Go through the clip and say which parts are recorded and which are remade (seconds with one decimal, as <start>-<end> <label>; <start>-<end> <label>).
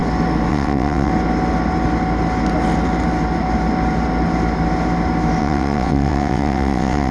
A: 0.0-0.5 recorded; 0.5-1.1 remade; 1.1-5.4 recorded; 5.4-7.1 remade